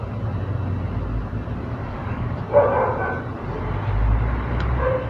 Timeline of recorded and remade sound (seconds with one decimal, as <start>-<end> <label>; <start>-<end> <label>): 0.0-1.8 recorded; 1.8-2.4 remade; 2.4-5.1 recorded